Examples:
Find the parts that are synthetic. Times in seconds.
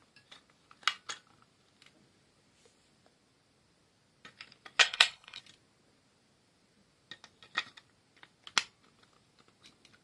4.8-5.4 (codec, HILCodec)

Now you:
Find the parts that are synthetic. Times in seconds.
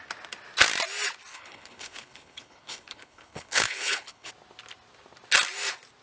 1.3-4.3 (codec, HILCodec)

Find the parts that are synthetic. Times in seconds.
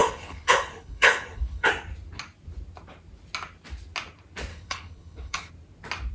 0.0-1.7 (codec, HILCodec); 4.5-5.5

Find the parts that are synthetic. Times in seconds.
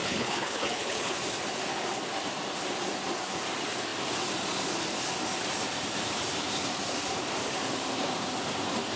0.0-1.2 (codec, HILCodec)